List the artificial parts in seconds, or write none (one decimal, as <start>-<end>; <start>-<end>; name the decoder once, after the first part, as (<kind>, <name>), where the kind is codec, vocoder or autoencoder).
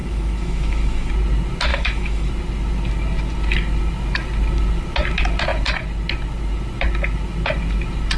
0.0-1.1 (autoencoder, DAC-VAE); 1.7-2.3